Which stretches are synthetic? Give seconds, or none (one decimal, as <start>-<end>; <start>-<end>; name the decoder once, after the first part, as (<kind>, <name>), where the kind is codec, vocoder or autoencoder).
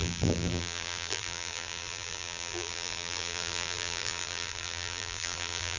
0.0-5.8 (vocoder, BigVGAN v2)